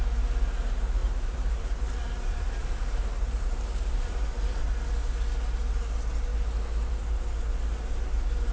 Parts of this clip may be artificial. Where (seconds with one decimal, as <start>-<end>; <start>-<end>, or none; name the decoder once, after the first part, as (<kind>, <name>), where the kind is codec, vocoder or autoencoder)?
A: 1.0-4.6 (vocoder, BigVGAN v2)